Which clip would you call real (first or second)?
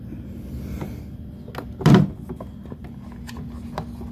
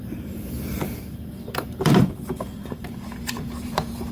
first